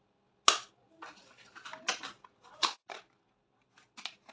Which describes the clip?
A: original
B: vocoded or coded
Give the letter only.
A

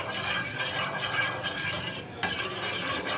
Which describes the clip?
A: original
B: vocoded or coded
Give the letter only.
A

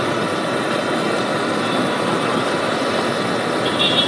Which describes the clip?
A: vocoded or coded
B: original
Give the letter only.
B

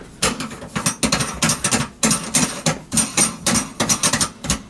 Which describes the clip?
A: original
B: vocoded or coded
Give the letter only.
A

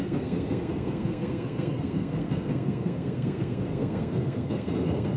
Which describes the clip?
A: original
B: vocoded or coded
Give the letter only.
B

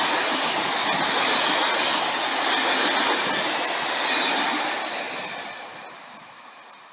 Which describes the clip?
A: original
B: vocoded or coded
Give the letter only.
A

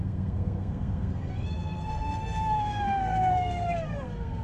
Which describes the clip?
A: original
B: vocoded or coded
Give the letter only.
B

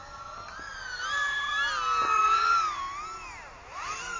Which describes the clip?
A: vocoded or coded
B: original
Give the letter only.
B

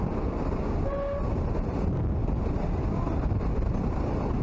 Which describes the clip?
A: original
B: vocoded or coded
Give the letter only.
A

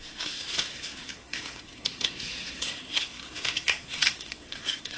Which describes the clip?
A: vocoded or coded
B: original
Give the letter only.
A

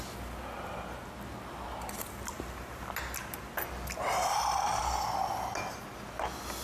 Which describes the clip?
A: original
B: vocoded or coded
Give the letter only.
A